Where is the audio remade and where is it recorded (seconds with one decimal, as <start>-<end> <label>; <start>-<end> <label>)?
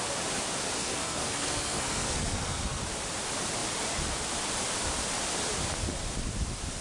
0.0-0.8 recorded; 0.8-2.8 remade; 2.8-6.8 recorded